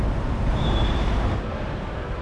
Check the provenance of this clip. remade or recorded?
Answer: remade